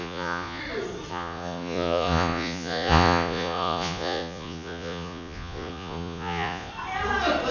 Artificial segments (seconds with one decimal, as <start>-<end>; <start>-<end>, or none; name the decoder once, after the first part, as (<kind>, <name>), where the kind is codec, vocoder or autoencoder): 0.0-0.6 (vocoder, Vocos); 1.1-6.7

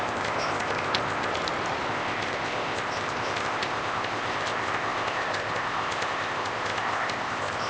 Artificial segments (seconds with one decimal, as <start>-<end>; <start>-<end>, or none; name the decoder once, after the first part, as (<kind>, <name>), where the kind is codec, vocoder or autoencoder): 0.0-1.3 (codec, ZipCodec); 1.9-7.7